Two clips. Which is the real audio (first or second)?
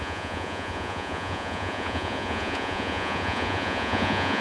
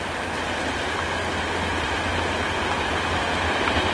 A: second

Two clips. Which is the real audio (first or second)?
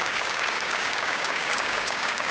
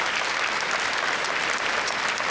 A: second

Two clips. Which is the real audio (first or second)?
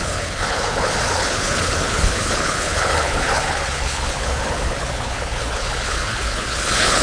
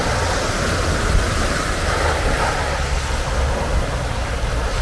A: second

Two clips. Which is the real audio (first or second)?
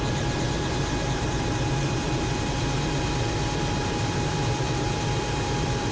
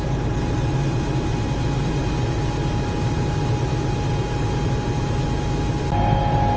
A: second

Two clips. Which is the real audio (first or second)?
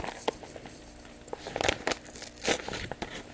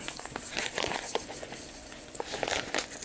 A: first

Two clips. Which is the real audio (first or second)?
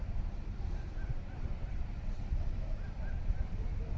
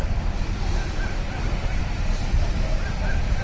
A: second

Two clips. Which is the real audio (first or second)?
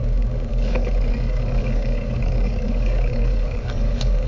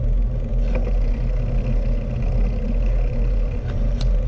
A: second